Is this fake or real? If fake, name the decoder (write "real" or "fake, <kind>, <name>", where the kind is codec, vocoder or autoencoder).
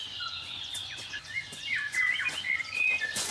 fake, vocoder, Vocos